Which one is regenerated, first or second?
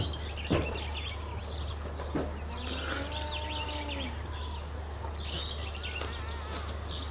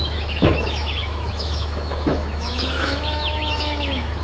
second